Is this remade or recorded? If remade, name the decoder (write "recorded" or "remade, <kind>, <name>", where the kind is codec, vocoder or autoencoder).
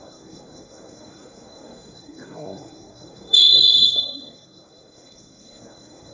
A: remade, codec, SNAC